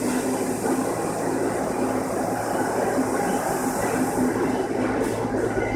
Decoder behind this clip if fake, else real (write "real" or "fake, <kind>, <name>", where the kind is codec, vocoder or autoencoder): real